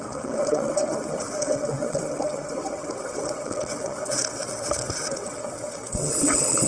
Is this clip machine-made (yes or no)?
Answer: yes